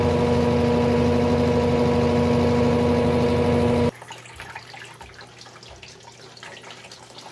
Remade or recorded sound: recorded